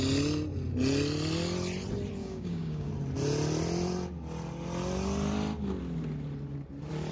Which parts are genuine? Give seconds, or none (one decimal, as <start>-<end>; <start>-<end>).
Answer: 0.0-2.2; 2.9-7.1